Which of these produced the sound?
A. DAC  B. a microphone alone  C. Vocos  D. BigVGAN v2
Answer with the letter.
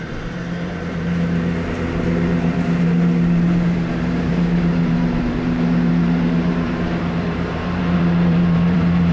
D